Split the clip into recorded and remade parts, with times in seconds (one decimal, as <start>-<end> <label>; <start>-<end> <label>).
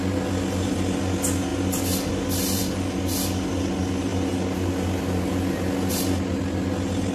0.0-7.1 recorded